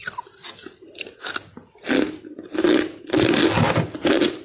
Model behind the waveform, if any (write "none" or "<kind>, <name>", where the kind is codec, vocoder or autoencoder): none